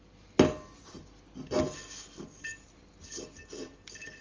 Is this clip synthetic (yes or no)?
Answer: no